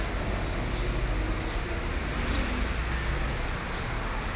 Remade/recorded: recorded